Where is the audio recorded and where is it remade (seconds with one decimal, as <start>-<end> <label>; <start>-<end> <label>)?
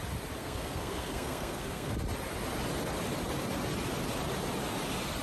0.0-0.4 recorded; 0.4-1.9 remade; 1.9-5.2 recorded